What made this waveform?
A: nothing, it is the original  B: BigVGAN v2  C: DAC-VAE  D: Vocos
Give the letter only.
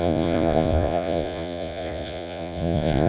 D